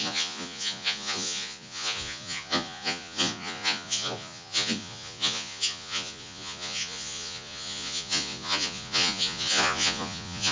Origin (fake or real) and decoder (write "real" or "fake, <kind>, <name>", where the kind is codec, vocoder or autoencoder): fake, vocoder, Vocos